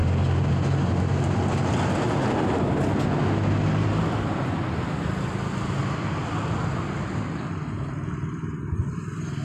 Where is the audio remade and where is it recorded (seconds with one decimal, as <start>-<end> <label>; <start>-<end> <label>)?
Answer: 0.0-9.4 recorded